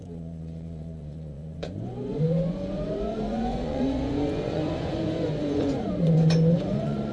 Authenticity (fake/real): fake